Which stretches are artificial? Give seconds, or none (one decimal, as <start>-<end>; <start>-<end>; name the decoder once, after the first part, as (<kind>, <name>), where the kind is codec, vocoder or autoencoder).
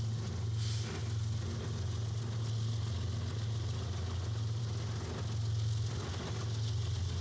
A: none